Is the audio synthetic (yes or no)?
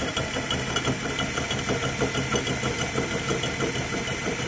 no